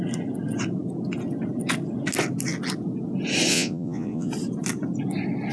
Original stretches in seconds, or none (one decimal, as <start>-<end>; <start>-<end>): 0.0-3.5; 4.3-5.5